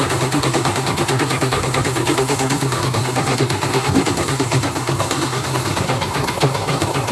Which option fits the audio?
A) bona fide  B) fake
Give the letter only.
B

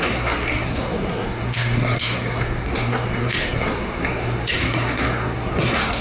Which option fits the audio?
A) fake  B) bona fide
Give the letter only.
A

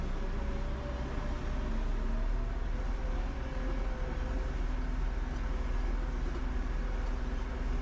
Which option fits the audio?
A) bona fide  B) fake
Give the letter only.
A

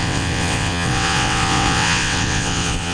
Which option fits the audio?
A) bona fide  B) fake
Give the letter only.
B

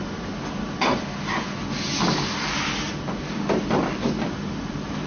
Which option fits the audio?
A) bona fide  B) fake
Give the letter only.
A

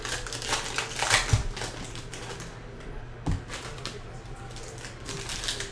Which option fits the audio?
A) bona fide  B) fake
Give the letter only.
A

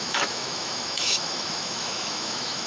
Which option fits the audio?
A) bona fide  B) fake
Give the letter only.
B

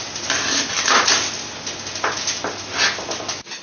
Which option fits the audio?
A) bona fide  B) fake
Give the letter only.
A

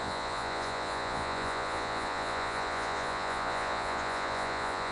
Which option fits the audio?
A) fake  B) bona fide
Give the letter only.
A